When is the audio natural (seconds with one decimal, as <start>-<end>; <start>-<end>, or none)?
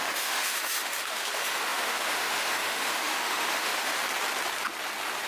3.9-5.3